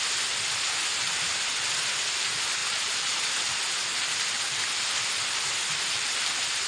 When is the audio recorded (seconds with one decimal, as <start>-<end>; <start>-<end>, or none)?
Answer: 0.0-2.6; 3.5-5.6